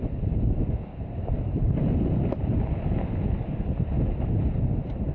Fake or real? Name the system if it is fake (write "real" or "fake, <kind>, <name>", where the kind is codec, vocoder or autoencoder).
real